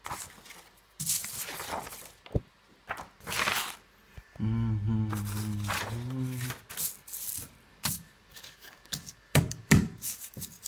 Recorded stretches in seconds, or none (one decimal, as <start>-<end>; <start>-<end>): 0.0-7.7